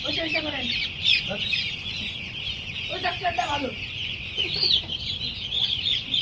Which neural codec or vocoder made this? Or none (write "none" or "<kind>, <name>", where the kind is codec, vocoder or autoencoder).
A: vocoder, Vocos